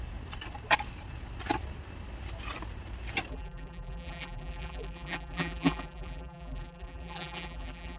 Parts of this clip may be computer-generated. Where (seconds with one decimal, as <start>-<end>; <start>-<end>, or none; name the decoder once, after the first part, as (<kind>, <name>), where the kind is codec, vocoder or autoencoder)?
3.3-8.0 (vocoder, BigVGAN v2)